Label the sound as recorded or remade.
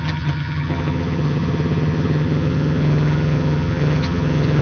remade